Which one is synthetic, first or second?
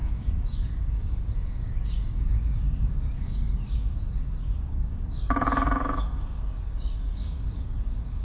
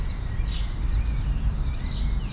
first